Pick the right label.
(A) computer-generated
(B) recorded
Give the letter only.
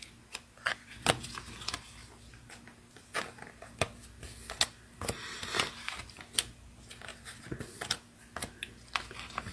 B